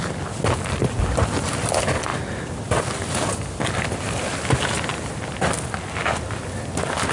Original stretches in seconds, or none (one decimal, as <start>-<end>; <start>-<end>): 0.0-7.1